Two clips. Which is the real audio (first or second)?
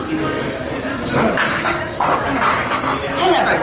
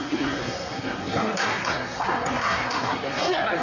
first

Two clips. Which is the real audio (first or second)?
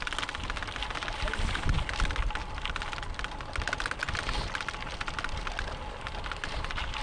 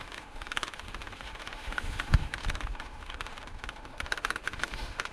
first